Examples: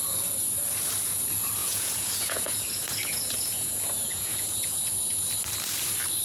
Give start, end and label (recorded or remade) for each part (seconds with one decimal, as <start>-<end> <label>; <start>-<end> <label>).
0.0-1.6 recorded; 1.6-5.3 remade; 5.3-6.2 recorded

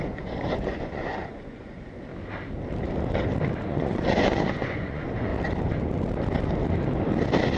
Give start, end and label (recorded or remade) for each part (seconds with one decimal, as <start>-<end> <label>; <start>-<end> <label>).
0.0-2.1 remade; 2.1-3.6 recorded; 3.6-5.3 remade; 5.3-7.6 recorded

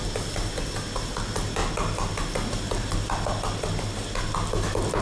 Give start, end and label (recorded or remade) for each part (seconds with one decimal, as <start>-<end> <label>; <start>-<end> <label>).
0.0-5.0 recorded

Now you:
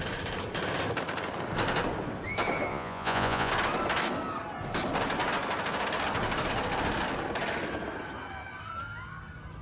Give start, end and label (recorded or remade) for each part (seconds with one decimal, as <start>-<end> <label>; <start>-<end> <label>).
0.0-2.7 recorded; 2.7-3.5 remade; 3.5-9.6 recorded

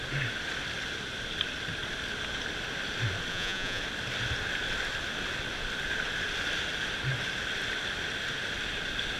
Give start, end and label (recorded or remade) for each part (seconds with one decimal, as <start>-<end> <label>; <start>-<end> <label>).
0.0-3.3 recorded; 3.3-3.8 remade; 3.8-9.2 recorded